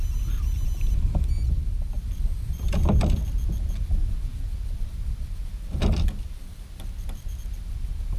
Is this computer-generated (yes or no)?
no